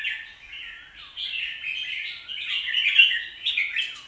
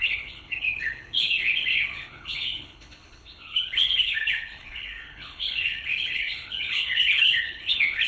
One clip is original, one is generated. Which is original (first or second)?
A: first